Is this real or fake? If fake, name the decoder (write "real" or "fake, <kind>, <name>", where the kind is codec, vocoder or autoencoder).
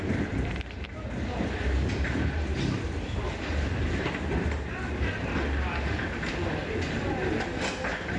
real